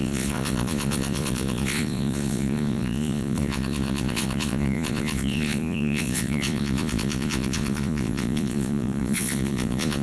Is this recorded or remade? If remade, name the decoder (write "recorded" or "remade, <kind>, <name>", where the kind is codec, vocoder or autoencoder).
remade, vocoder, Vocos